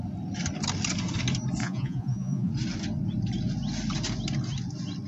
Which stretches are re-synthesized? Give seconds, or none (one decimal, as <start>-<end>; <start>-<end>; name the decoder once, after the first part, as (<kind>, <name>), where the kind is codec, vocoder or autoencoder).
1.6-2.5 (vocoder, Vocos)